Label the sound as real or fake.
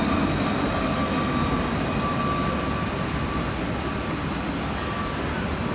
real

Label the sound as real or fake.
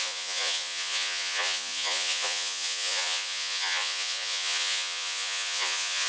fake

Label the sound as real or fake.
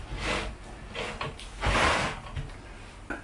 real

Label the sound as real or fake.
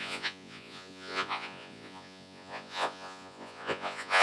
fake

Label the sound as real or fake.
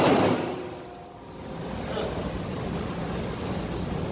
real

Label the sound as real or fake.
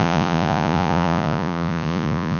fake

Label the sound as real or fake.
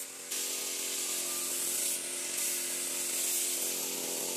real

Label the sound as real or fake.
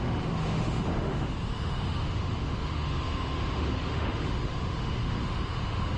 fake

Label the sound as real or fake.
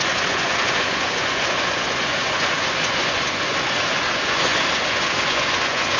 fake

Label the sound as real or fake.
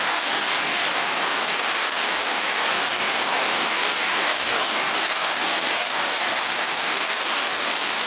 fake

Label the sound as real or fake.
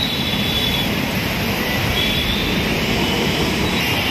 real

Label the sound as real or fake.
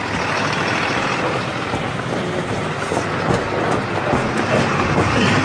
real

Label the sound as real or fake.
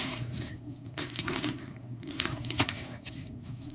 fake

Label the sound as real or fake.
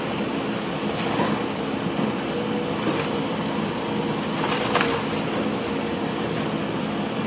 real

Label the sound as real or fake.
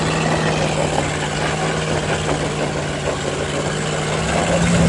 real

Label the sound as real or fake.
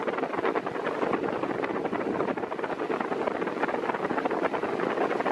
real